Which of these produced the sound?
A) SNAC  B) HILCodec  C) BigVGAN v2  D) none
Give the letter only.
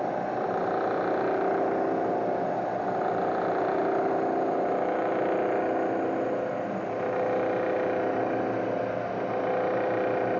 D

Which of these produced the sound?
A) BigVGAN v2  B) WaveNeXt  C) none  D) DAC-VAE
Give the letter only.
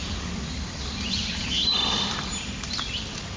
C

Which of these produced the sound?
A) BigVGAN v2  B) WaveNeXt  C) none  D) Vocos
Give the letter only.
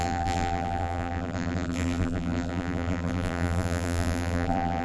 A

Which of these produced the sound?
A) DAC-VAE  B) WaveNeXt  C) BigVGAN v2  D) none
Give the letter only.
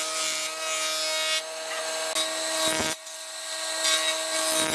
D